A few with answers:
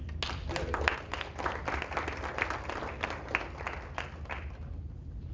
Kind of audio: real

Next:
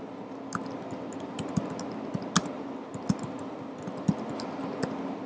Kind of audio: real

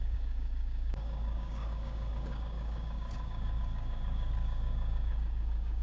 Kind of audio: fake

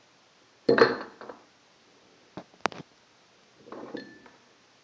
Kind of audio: real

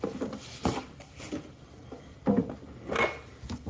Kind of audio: real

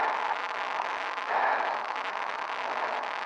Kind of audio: fake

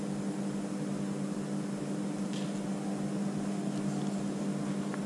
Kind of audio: real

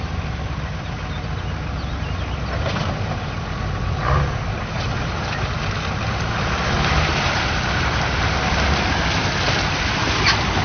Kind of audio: real